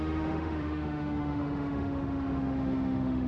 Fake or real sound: fake